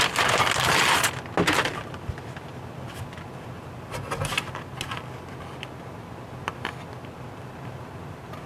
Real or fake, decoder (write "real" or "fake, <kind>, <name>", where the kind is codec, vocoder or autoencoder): real